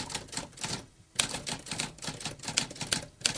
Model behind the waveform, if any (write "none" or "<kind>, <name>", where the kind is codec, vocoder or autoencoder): none